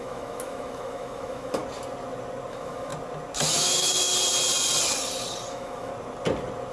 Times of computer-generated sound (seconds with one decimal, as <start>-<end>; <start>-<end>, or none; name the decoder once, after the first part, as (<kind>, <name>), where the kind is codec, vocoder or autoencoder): 0.0-1.6 (autoencoder, DAC-VAE); 2.5-2.9; 3.5-4.1; 5.5-5.9